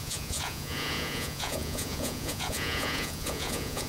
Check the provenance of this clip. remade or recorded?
remade